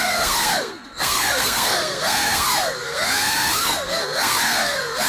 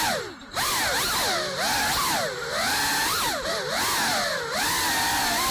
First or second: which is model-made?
first